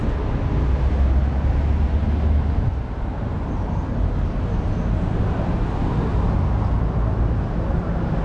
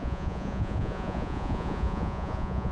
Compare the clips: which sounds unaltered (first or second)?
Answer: first